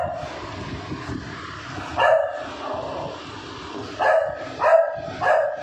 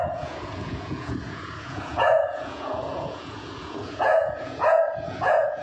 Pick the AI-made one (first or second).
second